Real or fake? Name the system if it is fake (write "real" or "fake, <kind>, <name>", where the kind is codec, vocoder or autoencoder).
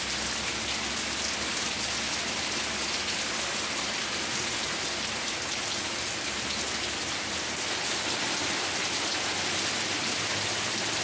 real